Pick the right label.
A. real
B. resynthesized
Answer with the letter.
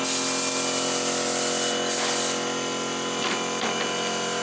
A